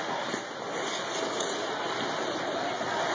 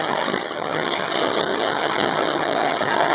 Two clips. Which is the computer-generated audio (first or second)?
second